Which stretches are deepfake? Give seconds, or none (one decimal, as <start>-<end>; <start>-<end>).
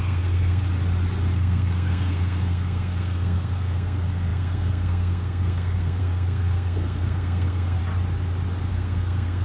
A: 0.0-0.6; 1.3-7.8; 8.7-9.4